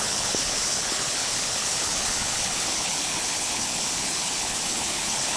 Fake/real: fake